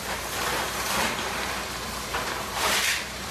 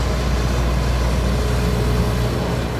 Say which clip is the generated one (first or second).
first